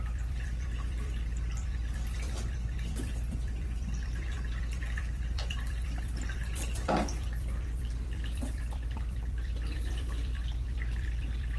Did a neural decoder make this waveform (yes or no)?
yes